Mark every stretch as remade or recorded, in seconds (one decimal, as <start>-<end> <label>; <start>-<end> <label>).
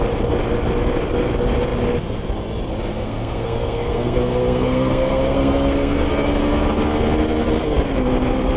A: 0.0-2.9 recorded; 2.9-6.1 remade; 6.1-8.6 recorded